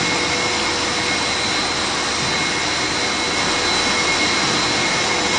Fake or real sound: real